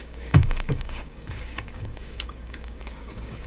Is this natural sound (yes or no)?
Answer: no